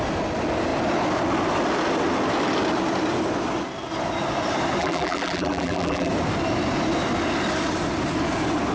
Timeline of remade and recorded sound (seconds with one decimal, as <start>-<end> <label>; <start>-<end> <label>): 0.0-4.8 recorded; 4.8-6.1 remade; 6.1-8.7 recorded